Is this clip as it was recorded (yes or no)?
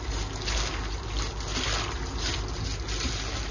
yes